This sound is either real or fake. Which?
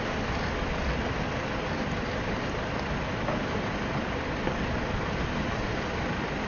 real